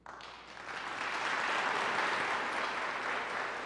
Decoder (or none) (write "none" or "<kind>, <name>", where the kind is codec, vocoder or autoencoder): none